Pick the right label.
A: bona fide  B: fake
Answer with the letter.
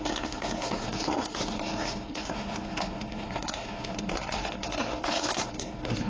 B